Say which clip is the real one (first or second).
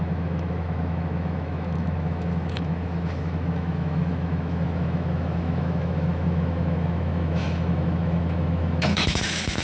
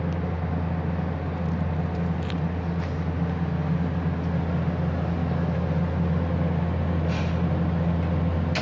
second